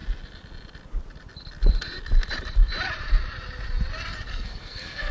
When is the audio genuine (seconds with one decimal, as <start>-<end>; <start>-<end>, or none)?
0.0-4.3